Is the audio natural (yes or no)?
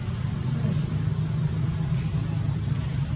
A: yes